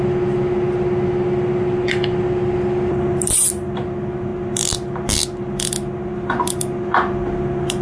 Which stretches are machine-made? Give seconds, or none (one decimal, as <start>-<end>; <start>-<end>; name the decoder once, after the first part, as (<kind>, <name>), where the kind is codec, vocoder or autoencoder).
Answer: none